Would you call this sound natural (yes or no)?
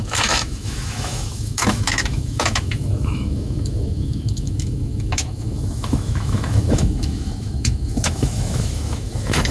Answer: no